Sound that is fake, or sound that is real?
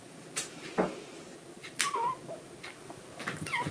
real